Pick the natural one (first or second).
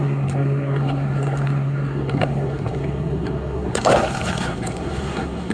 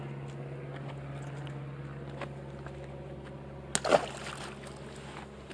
second